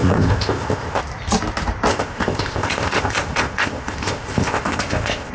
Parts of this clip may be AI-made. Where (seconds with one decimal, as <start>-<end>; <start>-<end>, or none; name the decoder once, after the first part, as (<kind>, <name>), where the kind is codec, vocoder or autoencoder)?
0.0-1.0 (codec, ZipCodec); 1.9-5.3